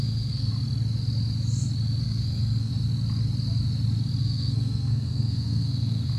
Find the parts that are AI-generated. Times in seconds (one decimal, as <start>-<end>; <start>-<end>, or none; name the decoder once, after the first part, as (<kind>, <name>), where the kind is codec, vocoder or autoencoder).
0.0-0.5 (codec, SNAC); 2.0-2.7; 4.2-6.2